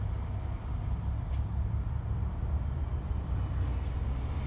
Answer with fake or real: real